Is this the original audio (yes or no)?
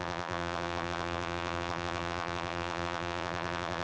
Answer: no